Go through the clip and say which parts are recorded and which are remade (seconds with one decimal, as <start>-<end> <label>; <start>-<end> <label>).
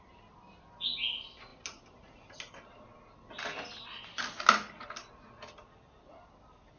0.0-6.8 recorded